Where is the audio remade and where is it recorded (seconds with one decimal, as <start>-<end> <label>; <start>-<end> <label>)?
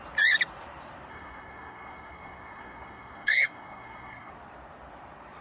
0.0-1.1 recorded; 1.1-4.3 remade; 4.3-5.4 recorded